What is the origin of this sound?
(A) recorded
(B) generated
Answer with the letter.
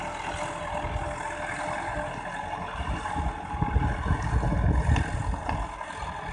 A